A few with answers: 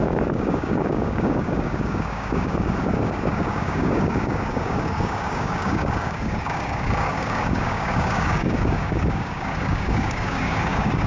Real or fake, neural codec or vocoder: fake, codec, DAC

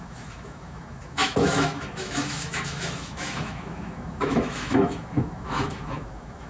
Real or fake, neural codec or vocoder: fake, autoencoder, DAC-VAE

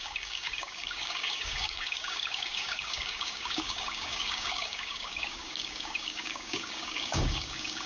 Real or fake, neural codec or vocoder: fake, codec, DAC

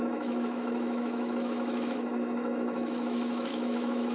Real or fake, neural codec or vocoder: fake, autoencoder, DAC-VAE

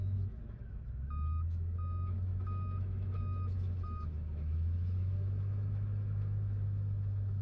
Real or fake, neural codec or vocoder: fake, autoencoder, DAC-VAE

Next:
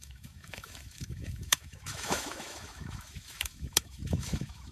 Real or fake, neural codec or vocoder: fake, autoencoder, DAC-VAE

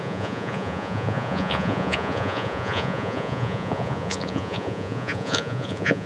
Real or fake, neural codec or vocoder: fake, vocoder, Vocos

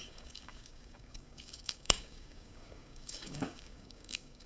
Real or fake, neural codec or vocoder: fake, codec, DAC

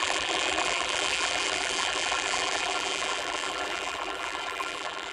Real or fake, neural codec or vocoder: fake, vocoder, BigVGAN v2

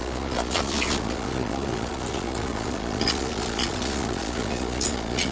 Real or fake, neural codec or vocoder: fake, vocoder, Vocos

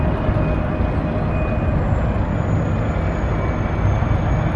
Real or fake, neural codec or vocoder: real